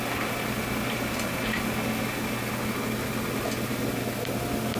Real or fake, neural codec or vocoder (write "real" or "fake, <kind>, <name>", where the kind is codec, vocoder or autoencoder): real